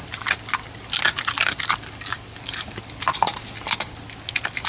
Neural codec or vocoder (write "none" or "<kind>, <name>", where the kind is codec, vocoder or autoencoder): none